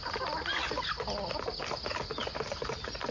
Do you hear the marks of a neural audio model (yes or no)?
no